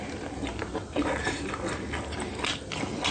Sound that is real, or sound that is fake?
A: real